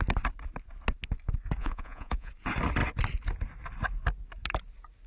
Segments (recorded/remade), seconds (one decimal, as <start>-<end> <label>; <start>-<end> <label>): 0.0-1.6 recorded; 1.6-2.3 remade; 2.3-5.1 recorded